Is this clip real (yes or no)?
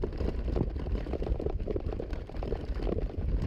no